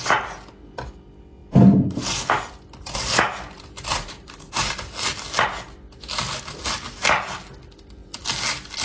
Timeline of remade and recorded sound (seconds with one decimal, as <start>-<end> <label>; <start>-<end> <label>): 0.0-3.9 recorded; 3.9-4.7 remade; 4.7-8.8 recorded